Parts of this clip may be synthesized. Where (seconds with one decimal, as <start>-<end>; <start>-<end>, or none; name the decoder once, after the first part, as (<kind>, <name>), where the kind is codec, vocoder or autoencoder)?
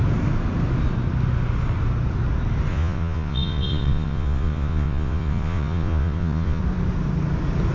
2.7-6.6 (vocoder, Vocos)